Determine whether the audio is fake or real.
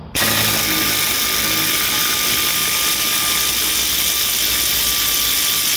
real